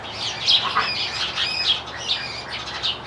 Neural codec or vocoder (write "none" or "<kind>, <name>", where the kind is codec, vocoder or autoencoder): none